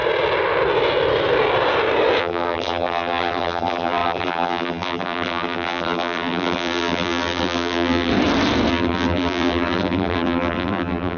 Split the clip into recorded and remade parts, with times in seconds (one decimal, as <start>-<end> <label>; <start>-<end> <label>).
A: 0.0-2.2 recorded; 2.2-8.1 remade; 8.1-8.7 recorded; 8.7-11.2 remade